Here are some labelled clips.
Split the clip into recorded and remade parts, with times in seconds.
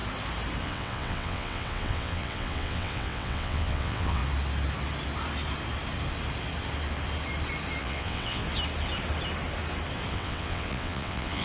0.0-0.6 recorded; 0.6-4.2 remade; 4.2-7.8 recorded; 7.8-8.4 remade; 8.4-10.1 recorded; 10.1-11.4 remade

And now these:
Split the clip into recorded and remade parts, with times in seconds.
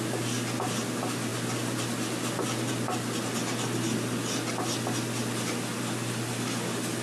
0.0-7.0 recorded